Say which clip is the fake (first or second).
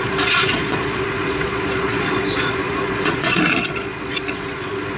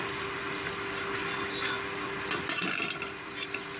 first